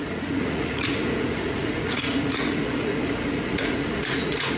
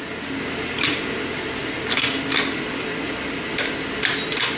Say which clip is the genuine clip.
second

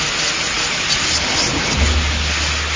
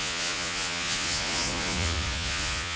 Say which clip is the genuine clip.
first